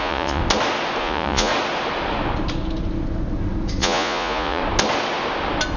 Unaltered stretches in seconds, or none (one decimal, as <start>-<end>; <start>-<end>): 0.4-1.0; 1.5-3.8; 4.6-5.8